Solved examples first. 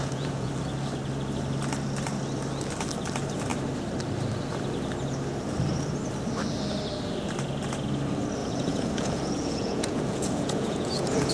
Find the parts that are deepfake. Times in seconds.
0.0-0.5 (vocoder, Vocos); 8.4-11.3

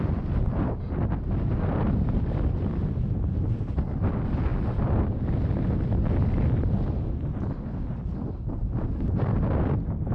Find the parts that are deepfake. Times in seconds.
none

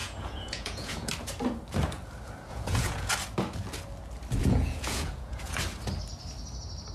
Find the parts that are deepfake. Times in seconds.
0.0-1.1 (vocoder, Vocos); 2.5-3.1; 4.4-5.6

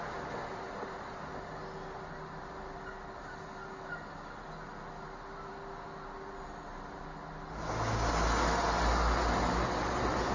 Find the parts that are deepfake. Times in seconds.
none